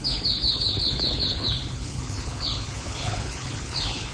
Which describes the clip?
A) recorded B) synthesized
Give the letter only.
B